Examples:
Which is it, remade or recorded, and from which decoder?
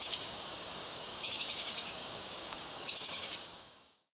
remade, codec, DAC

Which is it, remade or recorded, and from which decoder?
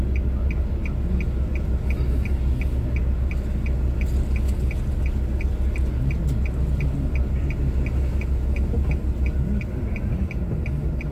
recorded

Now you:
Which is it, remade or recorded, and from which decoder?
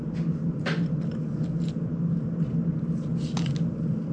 recorded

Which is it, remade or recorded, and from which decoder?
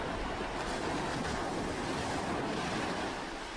recorded